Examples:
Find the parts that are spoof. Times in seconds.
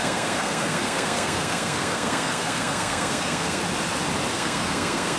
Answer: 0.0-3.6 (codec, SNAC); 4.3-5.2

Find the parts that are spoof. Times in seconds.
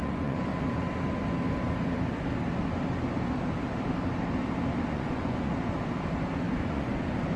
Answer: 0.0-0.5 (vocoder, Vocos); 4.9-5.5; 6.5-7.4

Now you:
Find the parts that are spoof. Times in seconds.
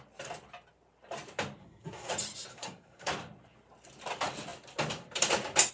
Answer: 1.6-2.1 (codec, SNAC); 2.5-3.1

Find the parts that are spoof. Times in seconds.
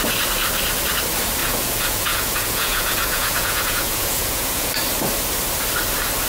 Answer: 1.4-4.7 (vocoder, Vocos)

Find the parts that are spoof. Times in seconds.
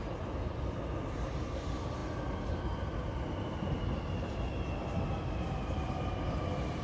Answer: none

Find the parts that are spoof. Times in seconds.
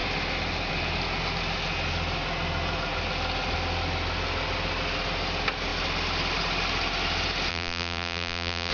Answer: 7.5-8.7 (vocoder, BigVGAN v2)